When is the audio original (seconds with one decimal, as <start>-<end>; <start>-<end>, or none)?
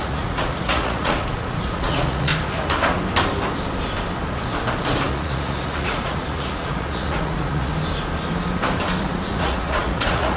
2.3-5.1; 7.7-9.0